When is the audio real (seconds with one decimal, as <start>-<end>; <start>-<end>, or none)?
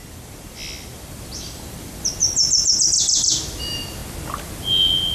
4.0-5.1